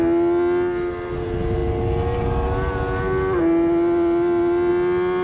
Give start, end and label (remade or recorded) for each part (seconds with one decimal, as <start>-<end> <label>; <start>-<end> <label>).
0.0-5.2 recorded